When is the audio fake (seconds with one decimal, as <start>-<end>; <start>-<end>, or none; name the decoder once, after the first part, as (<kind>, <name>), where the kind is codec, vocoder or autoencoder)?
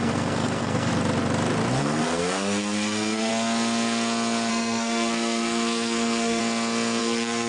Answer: 0.0-0.9 (codec, SNAC); 1.8-3.3; 4.5-6.4; 7.0-7.5